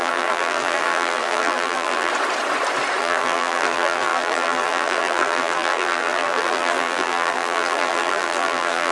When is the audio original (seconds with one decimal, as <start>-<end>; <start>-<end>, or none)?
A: 2.1-3.0